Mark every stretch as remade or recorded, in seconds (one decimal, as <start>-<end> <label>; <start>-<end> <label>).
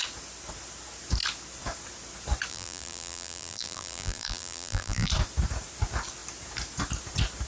0.0-2.5 recorded; 2.5-5.1 remade; 5.1-7.5 recorded